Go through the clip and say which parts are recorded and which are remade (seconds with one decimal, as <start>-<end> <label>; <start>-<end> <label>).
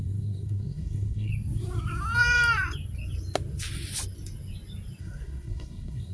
0.0-1.3 remade; 1.3-5.0 recorded; 5.0-6.1 remade